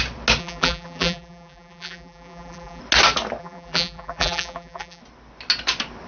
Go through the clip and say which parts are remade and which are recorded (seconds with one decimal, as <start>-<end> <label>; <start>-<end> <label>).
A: 0.0-0.4 recorded; 0.4-2.8 remade; 2.8-3.4 recorded; 3.4-5.0 remade; 5.0-6.1 recorded

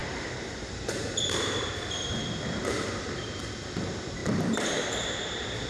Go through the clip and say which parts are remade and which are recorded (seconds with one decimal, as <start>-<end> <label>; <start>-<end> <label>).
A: 0.0-3.4 remade; 3.4-4.2 recorded; 4.2-5.7 remade